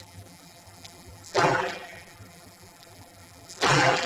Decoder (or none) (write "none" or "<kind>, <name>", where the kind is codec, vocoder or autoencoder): vocoder, BigVGAN v2